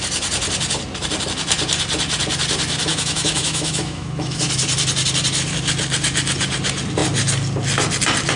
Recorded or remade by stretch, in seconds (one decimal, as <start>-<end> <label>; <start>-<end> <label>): 0.0-2.9 recorded; 2.9-4.4 remade; 4.4-8.4 recorded